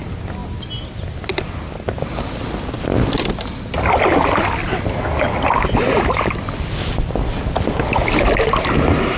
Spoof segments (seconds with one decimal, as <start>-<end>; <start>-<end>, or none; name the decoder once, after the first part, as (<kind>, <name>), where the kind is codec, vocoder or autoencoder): none